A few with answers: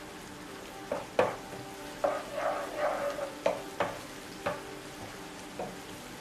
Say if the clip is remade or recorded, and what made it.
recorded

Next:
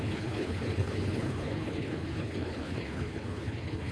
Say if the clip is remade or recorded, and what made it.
remade, codec, HILCodec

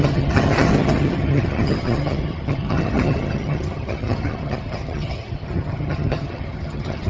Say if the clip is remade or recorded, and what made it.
remade, vocoder, HiFi-GAN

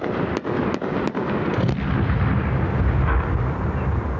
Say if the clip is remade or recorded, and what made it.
recorded